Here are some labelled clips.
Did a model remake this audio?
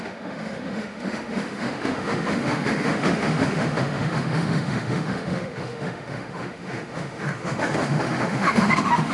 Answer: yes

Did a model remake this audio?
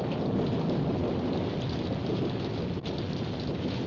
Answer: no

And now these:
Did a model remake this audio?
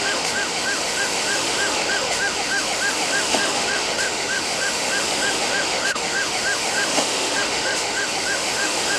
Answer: yes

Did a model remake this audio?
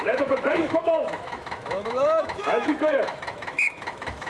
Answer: yes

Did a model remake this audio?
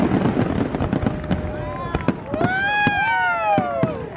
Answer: no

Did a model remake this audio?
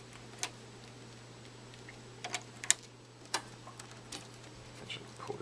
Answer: no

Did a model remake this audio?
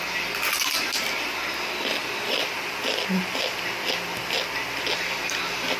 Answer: no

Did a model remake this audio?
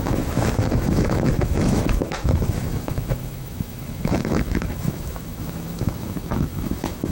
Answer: yes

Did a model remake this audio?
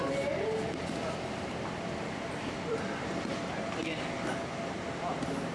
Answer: no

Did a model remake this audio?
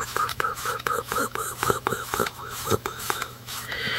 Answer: yes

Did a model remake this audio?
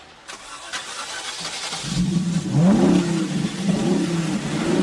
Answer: no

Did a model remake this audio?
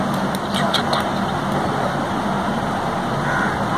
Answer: no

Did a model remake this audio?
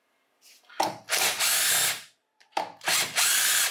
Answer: no